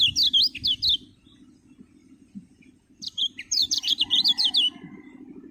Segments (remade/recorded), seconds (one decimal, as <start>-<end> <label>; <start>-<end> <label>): 0.0-2.0 recorded; 2.0-4.5 remade; 4.5-5.5 recorded

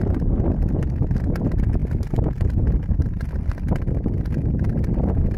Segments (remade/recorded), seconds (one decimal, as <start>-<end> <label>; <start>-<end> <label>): 0.0-5.4 recorded

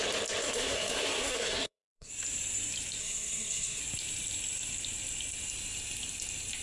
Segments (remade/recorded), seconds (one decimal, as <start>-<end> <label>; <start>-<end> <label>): 0.0-0.4 recorded; 0.4-2.1 remade; 2.1-3.0 recorded; 3.0-3.8 remade; 3.8-6.6 recorded

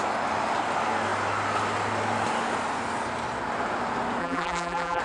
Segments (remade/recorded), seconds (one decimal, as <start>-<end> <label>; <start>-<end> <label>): 0.0-4.2 recorded; 4.2-5.0 remade